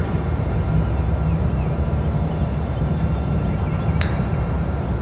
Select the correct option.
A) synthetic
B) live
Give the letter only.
A